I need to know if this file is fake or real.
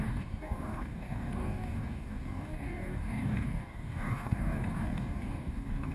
fake